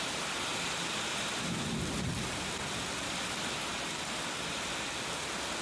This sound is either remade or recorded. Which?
recorded